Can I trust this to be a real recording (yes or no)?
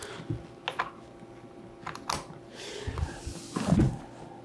yes